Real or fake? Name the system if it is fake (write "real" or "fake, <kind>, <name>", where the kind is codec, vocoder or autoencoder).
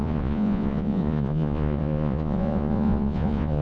fake, vocoder, Vocos